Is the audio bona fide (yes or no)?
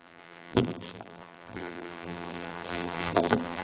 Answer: no